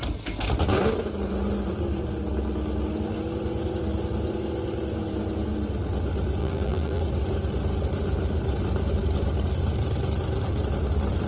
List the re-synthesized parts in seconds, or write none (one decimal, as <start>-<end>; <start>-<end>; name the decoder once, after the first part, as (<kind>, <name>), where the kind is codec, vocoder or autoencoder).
6.4-7.0 (vocoder, BigVGAN v2)